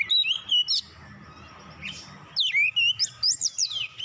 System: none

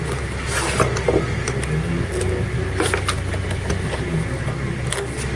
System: none